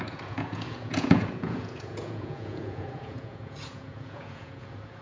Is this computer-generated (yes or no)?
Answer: yes